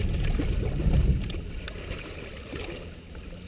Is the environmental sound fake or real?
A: real